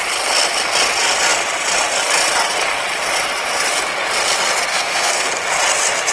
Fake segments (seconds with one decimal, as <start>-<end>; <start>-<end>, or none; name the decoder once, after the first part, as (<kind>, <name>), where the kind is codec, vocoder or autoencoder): 4.7-5.3 (codec, SNAC)